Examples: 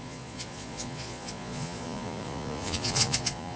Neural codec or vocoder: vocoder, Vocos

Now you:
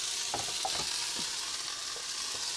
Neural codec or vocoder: none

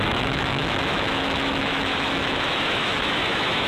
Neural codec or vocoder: autoencoder, DAC-VAE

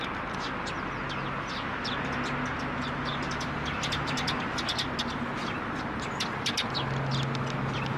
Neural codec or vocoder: none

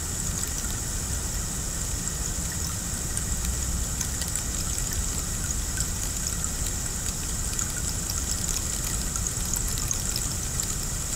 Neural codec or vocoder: none